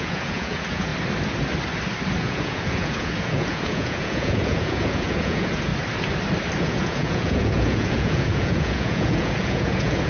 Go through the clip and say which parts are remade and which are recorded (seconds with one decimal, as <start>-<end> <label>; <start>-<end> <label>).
0.0-0.9 remade; 0.9-2.2 recorded; 2.2-5.7 remade; 5.7-6.6 recorded; 6.6-10.1 remade